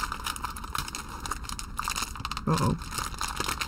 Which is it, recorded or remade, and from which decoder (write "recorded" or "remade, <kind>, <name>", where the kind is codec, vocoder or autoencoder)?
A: recorded